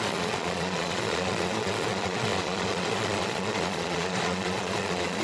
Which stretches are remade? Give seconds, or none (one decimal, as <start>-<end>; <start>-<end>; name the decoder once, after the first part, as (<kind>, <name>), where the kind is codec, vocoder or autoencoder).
0.0-5.2 (vocoder, Vocos)